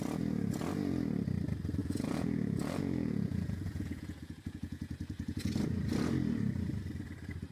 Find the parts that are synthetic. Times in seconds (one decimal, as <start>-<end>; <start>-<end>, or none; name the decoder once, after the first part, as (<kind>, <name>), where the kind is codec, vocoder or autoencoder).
1.8-5.5 (vocoder, Vocos)